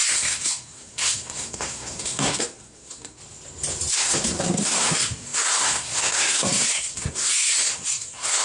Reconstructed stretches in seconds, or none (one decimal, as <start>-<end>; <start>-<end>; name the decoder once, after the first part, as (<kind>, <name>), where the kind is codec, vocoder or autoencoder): 0.0-3.2 (codec, SNAC); 3.9-8.4